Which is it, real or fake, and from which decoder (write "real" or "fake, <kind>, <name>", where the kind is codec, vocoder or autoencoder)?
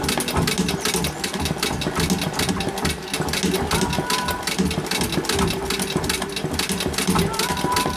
real